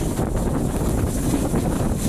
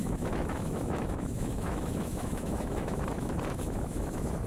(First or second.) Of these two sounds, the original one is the first